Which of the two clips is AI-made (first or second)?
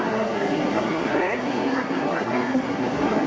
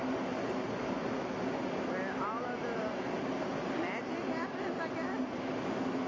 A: first